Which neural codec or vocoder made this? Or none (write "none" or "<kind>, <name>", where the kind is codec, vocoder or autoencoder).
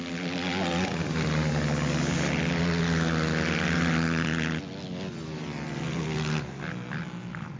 none